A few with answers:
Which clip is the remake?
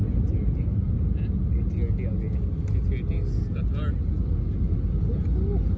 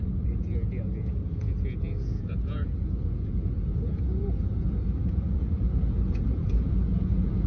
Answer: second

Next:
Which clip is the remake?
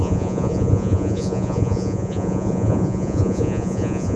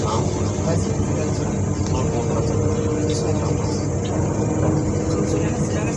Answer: first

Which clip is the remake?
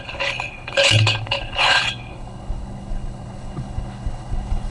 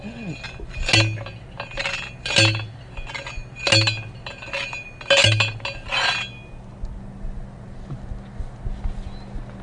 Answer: first